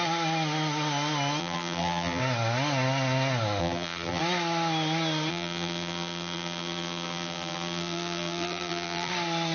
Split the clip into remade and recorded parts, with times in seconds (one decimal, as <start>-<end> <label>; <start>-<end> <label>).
0.0-1.4 recorded; 1.4-2.2 remade; 2.2-3.6 recorded; 3.6-4.2 remade; 4.2-5.3 recorded; 5.3-9.1 remade; 9.1-9.5 recorded